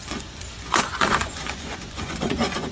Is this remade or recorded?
remade